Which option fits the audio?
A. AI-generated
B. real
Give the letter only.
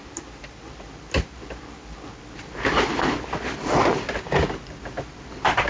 B